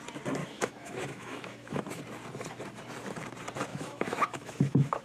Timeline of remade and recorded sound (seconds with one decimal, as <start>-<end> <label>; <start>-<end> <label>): 0.0-0.4 recorded; 0.4-2.0 remade; 2.0-3.7 recorded; 3.7-5.0 remade